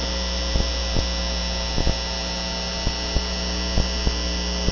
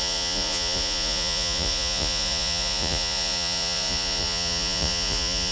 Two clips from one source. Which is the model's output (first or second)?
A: second